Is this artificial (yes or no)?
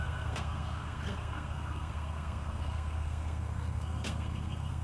yes